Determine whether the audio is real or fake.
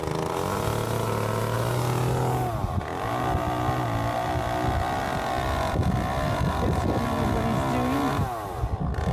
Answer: real